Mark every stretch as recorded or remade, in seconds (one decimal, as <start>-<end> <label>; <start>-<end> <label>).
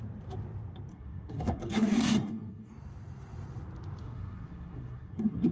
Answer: 0.0-0.9 recorded; 0.9-2.7 remade; 2.7-4.0 recorded; 4.0-5.5 remade